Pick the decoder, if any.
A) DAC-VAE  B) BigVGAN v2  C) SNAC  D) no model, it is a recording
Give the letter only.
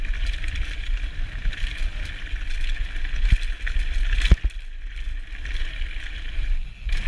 D